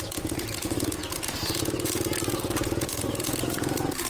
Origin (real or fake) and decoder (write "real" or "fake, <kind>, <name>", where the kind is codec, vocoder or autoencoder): fake, vocoder, Vocos